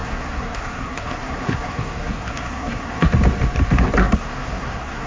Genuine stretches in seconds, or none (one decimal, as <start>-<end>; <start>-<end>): 3.1-4.0